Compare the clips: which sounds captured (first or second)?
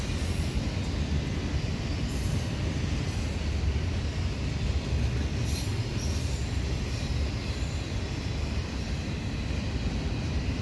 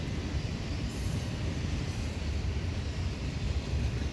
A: first